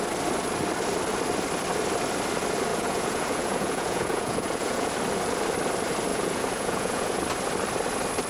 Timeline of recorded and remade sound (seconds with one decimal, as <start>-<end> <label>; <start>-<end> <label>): 0.0-2.7 recorded; 2.7-4.9 remade; 4.9-6.1 recorded; 6.1-7.2 remade; 7.2-8.3 recorded